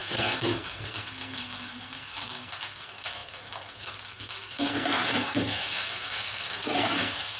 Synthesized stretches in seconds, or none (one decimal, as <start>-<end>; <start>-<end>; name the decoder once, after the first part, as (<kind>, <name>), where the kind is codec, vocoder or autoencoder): 0.0-7.4 (codec, SNAC)